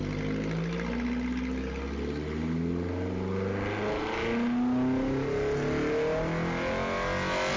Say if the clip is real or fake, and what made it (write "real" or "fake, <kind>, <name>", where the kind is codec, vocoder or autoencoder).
real